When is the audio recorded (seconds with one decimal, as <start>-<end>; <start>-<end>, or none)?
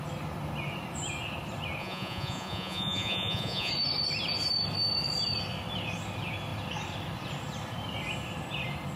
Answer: 0.0-1.8; 3.7-9.0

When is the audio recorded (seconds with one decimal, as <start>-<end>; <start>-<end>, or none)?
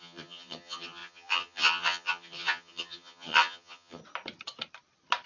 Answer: 4.0-5.3